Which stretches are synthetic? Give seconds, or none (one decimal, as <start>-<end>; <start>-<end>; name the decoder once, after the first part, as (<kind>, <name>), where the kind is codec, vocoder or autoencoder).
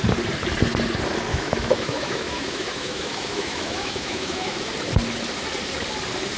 1.3-4.7 (autoencoder, DAC-VAE)